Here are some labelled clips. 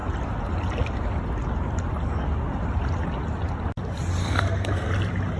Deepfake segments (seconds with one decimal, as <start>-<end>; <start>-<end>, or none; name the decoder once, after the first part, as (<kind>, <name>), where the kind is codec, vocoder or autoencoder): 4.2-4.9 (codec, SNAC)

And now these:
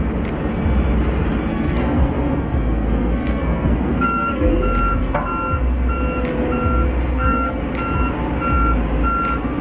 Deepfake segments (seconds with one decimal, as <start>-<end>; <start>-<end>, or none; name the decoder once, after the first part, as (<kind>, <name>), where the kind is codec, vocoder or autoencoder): 1.5-4.5 (codec, SNAC); 7.1-7.6

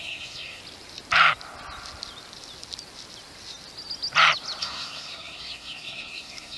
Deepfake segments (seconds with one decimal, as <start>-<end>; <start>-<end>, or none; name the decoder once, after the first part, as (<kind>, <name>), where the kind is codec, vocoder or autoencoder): 0.0-0.6 (codec, SNAC); 4.6-6.6

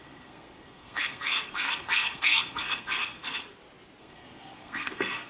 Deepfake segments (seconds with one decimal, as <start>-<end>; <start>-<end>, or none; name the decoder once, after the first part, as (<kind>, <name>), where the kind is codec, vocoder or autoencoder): 0.0-3.4 (codec, SNAC); 4.0-5.3